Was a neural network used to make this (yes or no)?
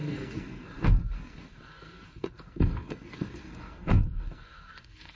yes